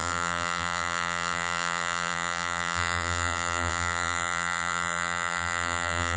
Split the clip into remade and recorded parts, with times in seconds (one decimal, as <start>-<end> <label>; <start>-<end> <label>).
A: 0.0-6.2 remade